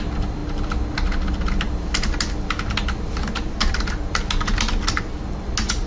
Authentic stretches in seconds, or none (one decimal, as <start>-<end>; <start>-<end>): 0.0-5.9